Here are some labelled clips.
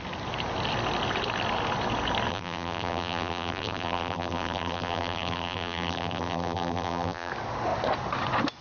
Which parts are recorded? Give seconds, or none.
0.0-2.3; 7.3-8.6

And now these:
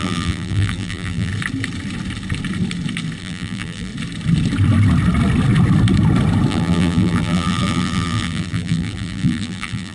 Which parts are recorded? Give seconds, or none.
1.3-3.2; 3.9-6.5

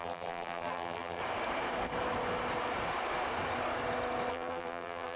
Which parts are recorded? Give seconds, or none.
1.2-4.3

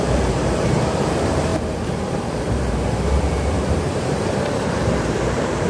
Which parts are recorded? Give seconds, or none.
none

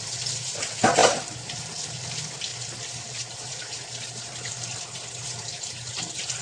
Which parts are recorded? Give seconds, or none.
0.0-1.0; 1.7-2.5; 4.5-6.4

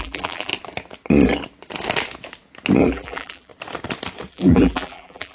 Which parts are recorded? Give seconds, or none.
0.5-2.8; 3.5-4.3

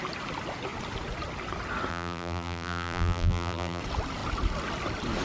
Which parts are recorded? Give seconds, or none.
0.0-1.9; 3.8-5.2

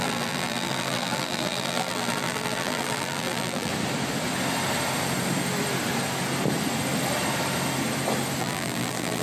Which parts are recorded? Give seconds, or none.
3.7-8.4